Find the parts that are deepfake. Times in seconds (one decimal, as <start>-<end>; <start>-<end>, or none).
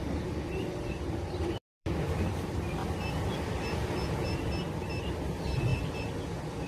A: 0.0-2.8; 4.1-6.7